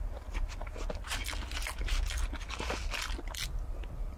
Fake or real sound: real